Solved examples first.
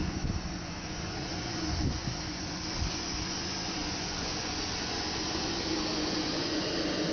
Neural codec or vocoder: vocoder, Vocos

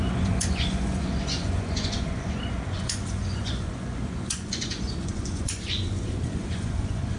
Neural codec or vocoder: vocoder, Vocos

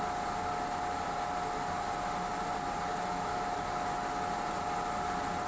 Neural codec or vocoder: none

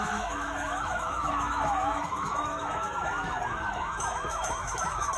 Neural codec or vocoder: autoencoder, DAC-VAE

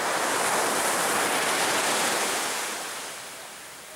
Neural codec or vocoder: none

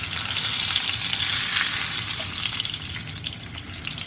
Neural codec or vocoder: none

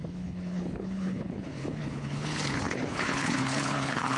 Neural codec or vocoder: codec, HILCodec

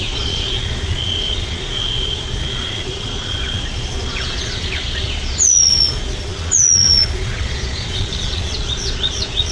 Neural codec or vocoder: vocoder, Vocos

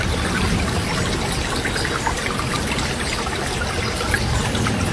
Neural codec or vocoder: none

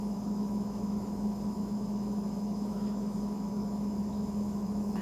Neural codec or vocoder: autoencoder, DAC-VAE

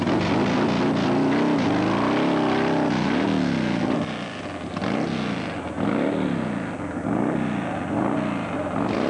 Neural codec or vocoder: none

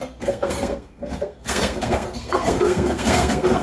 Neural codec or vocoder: codec, SNAC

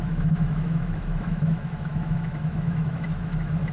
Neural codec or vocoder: autoencoder, DAC-VAE